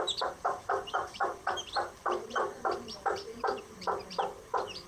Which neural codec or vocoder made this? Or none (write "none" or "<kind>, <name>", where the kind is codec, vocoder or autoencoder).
vocoder, BigVGAN v2